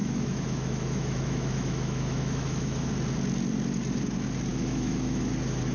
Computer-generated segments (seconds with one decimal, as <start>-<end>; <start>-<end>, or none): 0.0-2.9; 4.5-5.3